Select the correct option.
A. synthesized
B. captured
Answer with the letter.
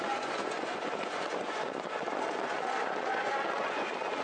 A